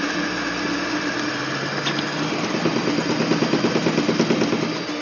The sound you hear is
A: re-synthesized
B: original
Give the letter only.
B